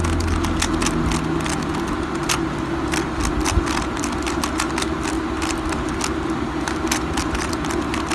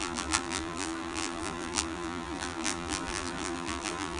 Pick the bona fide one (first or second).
first